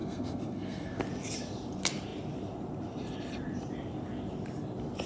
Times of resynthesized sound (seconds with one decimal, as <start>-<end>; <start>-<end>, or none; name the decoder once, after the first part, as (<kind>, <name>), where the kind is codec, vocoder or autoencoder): 0.0-1.0 (codec, SNAC)